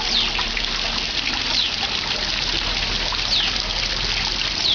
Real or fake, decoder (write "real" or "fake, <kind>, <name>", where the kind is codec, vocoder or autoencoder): real